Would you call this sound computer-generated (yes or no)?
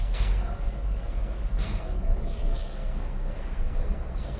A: yes